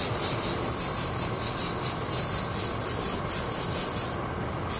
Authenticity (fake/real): real